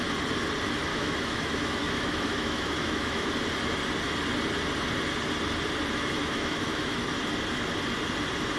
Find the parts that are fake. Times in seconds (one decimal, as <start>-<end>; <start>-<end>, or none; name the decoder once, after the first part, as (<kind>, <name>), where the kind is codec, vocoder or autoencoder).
0.9-3.3 (autoencoder, DAC-VAE); 6.2-7.0